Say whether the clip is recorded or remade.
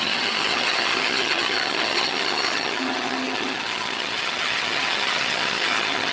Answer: remade